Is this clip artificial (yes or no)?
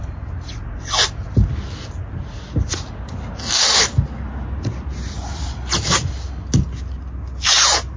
no